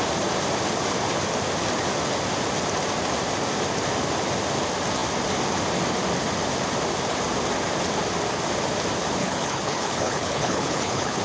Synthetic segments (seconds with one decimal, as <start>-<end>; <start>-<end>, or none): 9.2-11.2